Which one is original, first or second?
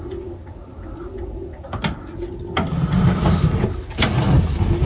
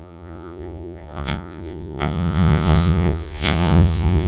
first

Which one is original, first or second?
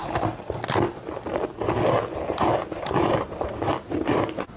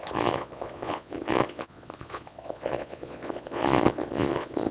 first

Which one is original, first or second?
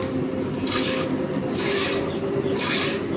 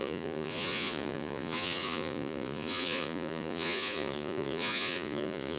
first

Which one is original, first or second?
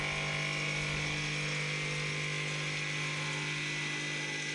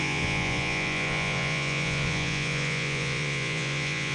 first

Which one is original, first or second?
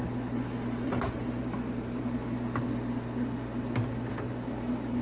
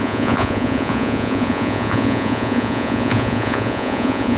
first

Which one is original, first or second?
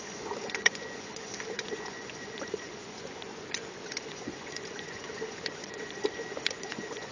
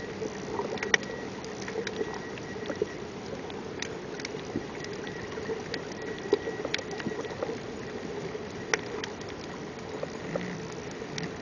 second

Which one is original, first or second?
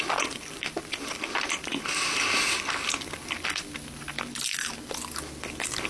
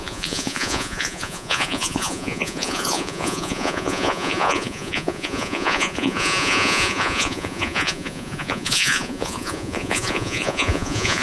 first